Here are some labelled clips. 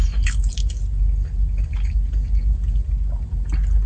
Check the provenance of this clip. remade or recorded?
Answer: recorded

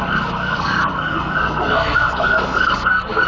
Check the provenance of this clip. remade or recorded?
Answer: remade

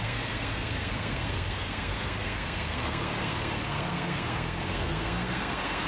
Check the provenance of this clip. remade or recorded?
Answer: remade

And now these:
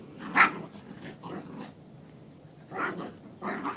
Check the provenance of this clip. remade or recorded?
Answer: recorded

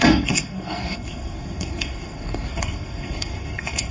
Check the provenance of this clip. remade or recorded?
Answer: remade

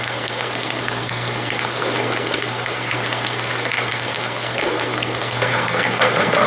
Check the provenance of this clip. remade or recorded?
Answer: remade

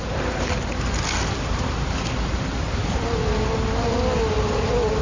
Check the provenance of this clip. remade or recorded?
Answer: recorded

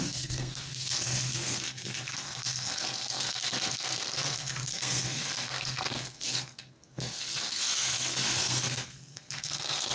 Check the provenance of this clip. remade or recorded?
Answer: remade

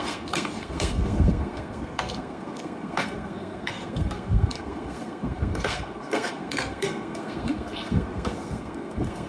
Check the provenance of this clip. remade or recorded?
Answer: remade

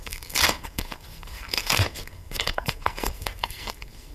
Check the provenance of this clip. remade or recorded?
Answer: remade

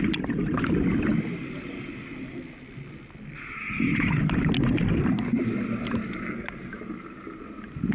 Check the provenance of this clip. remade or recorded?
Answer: recorded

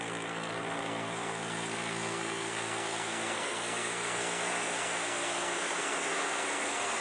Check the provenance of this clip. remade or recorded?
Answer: remade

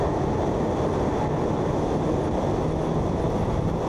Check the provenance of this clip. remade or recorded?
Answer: recorded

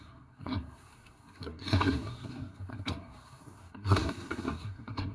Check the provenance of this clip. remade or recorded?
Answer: remade